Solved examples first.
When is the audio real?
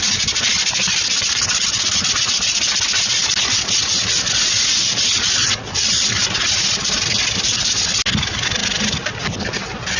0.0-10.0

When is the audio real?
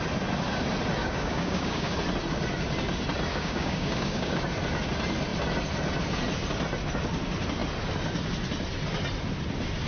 0.0-1.0; 1.9-3.3; 4.4-9.9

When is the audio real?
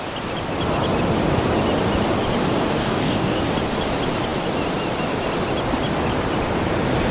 0.0-2.8; 3.4-7.1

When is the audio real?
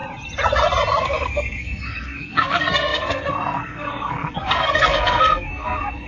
0.0-1.0